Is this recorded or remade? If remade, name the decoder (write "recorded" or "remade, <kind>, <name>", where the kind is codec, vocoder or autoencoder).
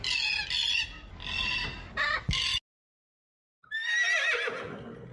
recorded